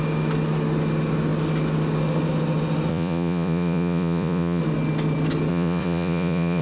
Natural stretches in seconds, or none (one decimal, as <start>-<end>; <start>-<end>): 0.0-2.9; 4.6-5.5